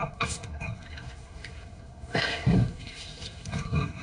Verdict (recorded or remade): remade